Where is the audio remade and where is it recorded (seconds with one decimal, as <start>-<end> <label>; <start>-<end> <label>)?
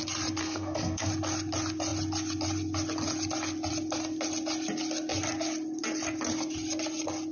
0.0-0.4 recorded; 0.4-1.1 remade; 1.1-7.3 recorded